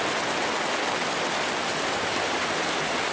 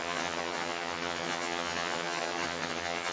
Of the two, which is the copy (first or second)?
second